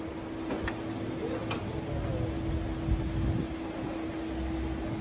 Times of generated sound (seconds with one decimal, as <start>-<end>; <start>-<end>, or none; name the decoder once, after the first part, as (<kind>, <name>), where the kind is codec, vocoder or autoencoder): none